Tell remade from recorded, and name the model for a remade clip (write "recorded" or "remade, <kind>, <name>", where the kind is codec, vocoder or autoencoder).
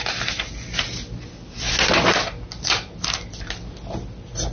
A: recorded